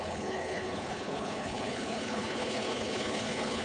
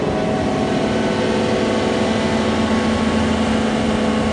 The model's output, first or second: first